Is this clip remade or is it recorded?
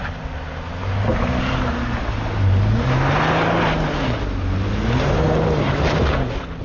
recorded